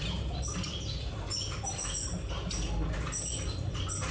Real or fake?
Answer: real